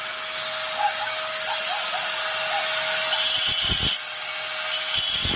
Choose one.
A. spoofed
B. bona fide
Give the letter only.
B